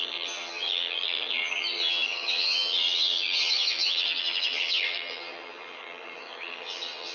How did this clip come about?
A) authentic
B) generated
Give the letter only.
B